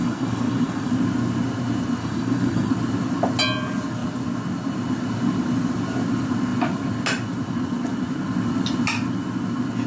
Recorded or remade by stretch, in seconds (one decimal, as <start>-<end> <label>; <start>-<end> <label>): 0.0-0.9 remade; 0.9-2.0 recorded; 2.0-2.7 remade; 2.7-9.9 recorded